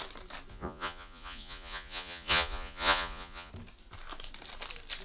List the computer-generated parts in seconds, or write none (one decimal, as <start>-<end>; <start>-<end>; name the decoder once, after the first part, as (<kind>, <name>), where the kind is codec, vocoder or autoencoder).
0.5-3.5 (vocoder, Vocos)